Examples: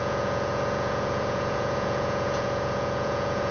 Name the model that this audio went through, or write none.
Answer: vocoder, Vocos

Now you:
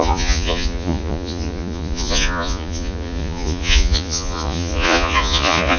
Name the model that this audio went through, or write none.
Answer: vocoder, Vocos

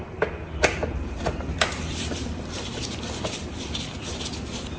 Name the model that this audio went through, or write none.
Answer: vocoder, BigVGAN v2